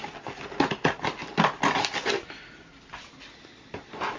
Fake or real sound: real